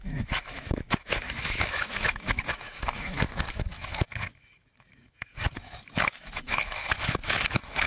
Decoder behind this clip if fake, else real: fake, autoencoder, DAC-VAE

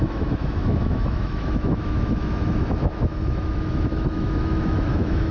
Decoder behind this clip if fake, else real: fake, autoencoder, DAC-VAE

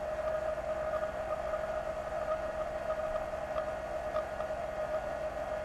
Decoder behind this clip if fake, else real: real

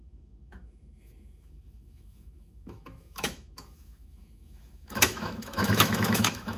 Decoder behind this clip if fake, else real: fake, autoencoder, DAC-VAE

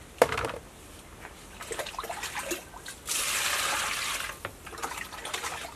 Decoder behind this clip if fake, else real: real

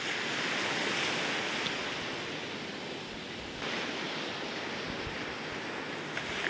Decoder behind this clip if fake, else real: real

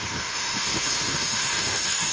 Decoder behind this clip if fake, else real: fake, autoencoder, DAC-VAE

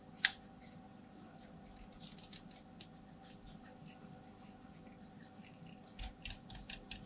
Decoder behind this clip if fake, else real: real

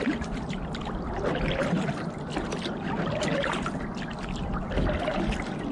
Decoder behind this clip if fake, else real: real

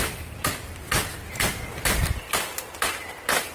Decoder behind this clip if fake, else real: real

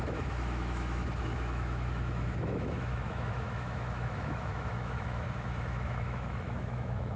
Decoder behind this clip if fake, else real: fake, autoencoder, DAC-VAE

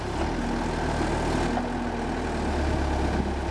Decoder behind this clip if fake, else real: real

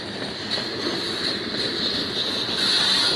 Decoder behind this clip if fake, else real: real